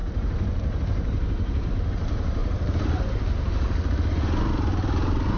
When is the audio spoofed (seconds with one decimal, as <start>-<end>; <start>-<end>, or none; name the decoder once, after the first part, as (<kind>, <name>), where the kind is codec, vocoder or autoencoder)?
0.0-1.7 (vocoder, BigVGAN v2); 2.4-2.9

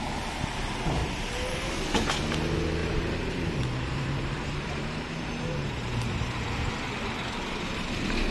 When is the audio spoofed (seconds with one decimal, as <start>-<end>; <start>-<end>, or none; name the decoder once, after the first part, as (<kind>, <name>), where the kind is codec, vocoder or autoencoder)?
1.0-1.7 (vocoder, BigVGAN v2); 2.8-6.7